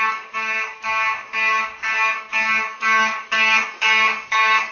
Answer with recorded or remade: remade